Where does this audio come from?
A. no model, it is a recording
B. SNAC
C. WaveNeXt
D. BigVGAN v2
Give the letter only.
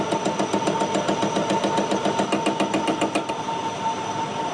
A